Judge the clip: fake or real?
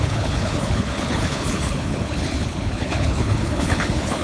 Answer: fake